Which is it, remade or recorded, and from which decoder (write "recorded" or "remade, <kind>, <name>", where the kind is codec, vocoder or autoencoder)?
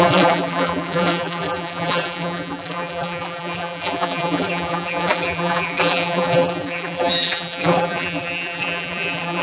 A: remade, vocoder, BigVGAN v2